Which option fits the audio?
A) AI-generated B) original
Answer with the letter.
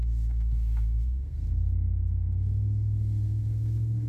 A